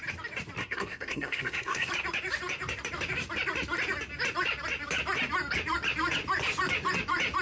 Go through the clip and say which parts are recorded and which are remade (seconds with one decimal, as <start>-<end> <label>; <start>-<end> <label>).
0.0-0.6 recorded; 0.6-1.9 remade; 1.9-7.4 recorded